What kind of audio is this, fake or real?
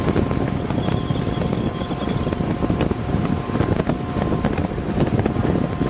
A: real